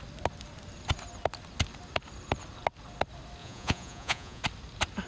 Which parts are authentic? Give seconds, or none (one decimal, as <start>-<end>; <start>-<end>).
0.0-3.4; 4.4-5.1